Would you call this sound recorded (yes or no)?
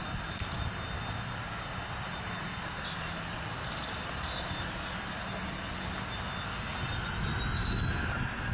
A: yes